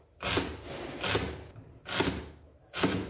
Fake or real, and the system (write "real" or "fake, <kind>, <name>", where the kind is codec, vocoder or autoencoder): real